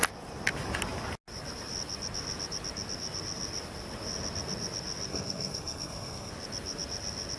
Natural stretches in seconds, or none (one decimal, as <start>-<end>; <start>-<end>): 0.0-5.1; 6.3-7.4